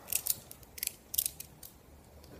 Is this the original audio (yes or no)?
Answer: yes